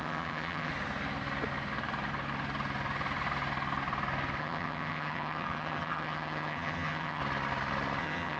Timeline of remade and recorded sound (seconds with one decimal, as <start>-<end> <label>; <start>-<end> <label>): 0.0-0.7 remade; 0.7-4.4 recorded; 4.4-7.2 remade; 7.2-8.0 recorded; 8.0-8.4 remade